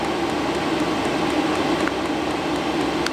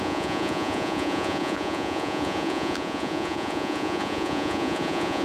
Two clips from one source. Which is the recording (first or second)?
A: first